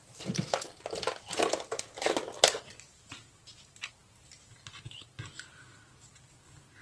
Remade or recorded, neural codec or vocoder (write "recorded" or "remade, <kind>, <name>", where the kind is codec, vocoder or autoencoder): recorded